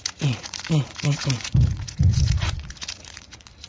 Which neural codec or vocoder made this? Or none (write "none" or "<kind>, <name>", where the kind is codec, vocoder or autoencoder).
vocoder, Vocos